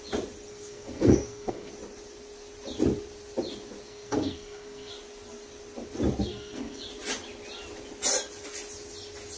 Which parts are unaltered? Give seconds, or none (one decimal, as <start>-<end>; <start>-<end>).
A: 0.0-0.5; 1.7-3.9; 4.9-6.3; 6.8-9.4